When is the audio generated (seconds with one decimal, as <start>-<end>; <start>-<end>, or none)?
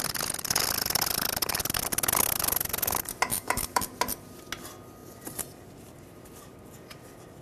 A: 3.3-3.8